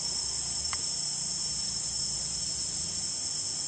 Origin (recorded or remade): recorded